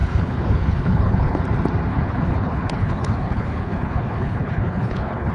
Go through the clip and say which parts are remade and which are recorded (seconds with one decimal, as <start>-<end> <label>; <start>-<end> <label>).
0.0-1.4 remade; 1.4-1.9 recorded; 1.9-5.3 remade